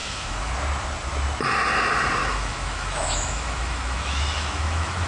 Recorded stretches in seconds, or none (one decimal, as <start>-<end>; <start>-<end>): 0.5-2.2